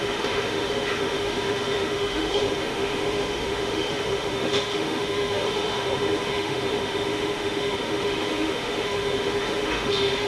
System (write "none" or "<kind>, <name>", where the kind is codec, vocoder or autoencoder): autoencoder, DAC-VAE